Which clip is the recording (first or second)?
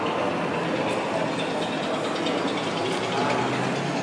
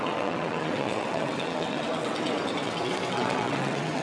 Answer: first